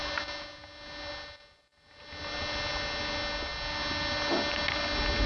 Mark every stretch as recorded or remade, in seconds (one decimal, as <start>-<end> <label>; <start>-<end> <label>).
0.0-5.3 recorded